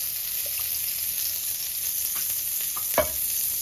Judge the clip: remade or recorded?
recorded